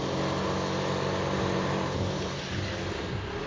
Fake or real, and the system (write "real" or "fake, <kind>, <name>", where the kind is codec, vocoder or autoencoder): real